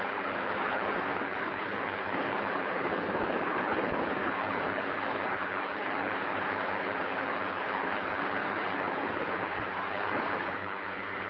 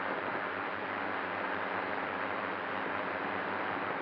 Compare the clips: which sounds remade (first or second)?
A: first